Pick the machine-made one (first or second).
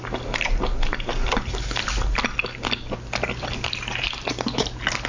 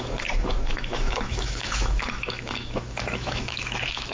second